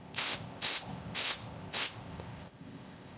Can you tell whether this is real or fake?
fake